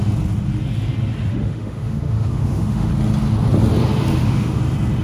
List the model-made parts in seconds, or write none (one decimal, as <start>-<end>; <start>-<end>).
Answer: 1.3-2.9; 4.1-4.6